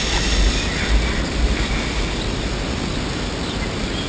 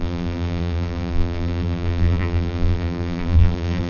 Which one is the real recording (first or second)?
first